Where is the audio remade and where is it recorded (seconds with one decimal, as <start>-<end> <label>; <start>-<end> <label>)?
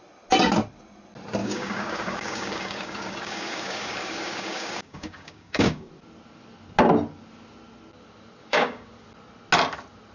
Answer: 0.0-1.4 recorded; 1.4-5.9 remade; 5.9-8.4 recorded; 8.4-8.9 remade; 8.9-10.1 recorded